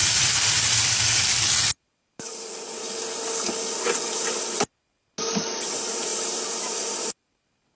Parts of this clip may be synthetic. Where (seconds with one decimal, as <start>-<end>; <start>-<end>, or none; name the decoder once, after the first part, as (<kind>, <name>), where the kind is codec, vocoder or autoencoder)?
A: 0.0-2.8 (vocoder, BigVGAN v2); 6.1-7.8